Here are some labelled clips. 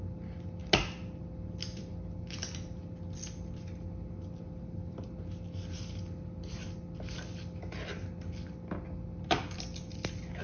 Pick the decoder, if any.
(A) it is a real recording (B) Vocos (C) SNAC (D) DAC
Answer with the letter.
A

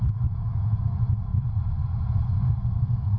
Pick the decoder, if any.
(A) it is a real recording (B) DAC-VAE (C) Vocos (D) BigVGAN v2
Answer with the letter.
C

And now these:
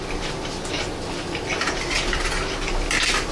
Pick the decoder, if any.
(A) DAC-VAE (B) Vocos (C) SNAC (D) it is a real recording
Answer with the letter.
D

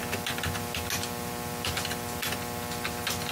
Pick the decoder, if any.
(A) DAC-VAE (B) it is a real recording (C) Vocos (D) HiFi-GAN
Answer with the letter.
B